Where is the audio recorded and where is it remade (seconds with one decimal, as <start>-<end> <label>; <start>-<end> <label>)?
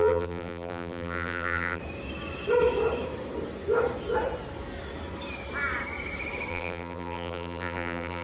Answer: 0.0-1.8 remade; 1.8-6.5 recorded; 6.5-8.2 remade